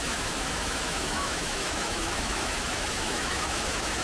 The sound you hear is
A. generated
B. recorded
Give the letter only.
A